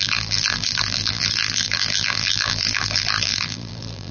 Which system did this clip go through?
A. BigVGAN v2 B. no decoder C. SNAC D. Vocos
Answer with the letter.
A